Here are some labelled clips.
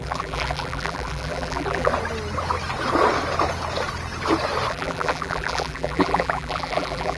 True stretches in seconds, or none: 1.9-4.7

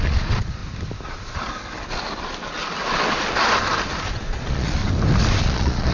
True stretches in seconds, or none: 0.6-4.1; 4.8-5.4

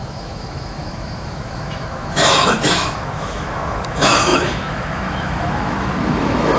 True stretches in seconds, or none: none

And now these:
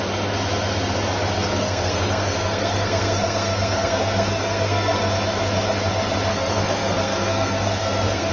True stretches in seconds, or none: 0.0-1.5; 5.1-6.3